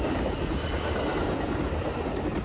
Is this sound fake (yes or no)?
no